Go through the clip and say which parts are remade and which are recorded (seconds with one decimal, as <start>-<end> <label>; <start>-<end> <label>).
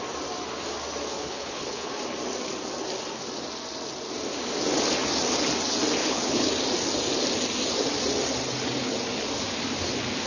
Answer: 0.0-1.1 recorded; 1.1-1.9 remade; 1.9-6.0 recorded; 6.0-6.5 remade; 6.5-10.3 recorded